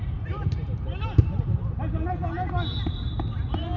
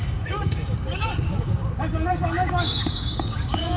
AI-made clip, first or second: second